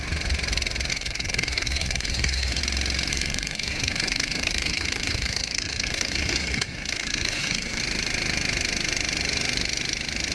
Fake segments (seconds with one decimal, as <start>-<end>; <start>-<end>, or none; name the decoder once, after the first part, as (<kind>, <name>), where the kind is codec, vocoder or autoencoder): 0.9-2.6 (codec, SNAC); 3.1-7.8